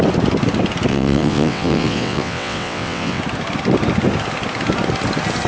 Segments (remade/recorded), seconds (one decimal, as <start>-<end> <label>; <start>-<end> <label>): 0.0-0.9 recorded; 0.9-3.2 remade; 3.2-5.5 recorded